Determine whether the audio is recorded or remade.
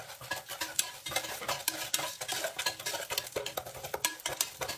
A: recorded